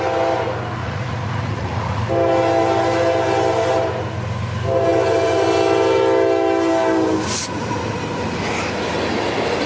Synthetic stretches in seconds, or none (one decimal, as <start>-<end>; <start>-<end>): 0.8-2.1